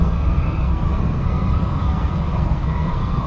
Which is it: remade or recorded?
remade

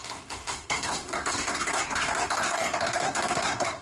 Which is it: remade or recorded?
remade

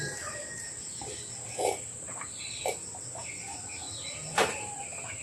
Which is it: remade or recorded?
recorded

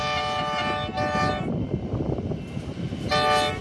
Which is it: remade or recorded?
recorded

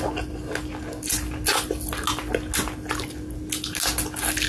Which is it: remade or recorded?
recorded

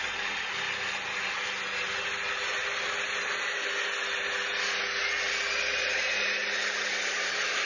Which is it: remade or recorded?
recorded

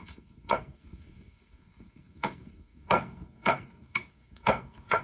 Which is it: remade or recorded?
remade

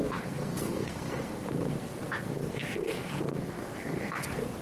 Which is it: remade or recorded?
remade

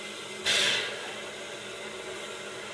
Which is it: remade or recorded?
recorded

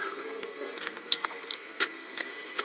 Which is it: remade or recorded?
remade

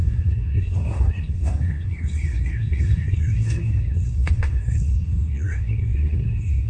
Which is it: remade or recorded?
remade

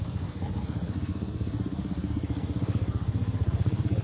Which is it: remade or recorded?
remade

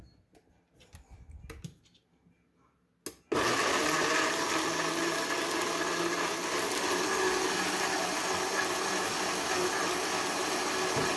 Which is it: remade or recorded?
recorded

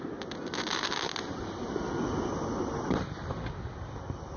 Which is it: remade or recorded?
recorded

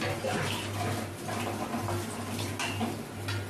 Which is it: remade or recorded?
recorded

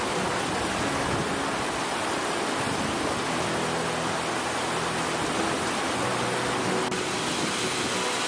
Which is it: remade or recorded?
recorded